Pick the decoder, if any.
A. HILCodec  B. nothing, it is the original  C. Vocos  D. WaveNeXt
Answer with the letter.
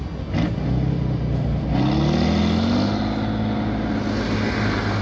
B